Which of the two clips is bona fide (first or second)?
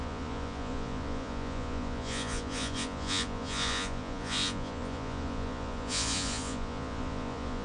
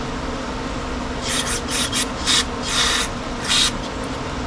second